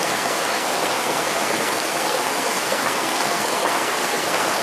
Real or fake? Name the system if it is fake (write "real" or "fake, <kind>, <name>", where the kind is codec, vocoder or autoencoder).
fake, codec, SNAC